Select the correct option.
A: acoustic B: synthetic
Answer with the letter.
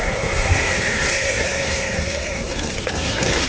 B